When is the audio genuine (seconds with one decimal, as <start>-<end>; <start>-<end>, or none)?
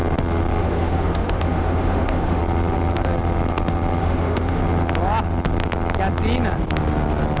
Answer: 0.0-0.6; 2.4-4.0; 4.6-7.4